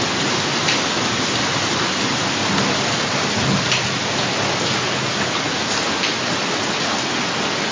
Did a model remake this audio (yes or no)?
no